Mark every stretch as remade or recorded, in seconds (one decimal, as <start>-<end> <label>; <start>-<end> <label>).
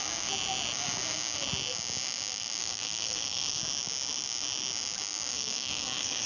0.0-2.6 recorded; 2.6-3.6 remade; 3.6-5.3 recorded; 5.3-6.3 remade